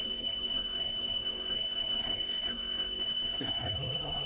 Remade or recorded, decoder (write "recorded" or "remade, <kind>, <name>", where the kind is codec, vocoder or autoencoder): remade, codec, SNAC